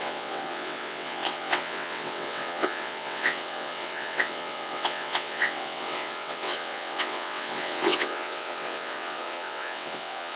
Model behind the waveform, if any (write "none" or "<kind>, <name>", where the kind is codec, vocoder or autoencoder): vocoder, WaveNeXt